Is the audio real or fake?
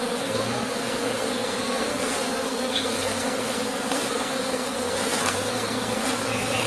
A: fake